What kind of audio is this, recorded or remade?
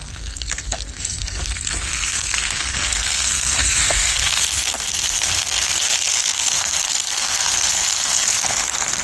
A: remade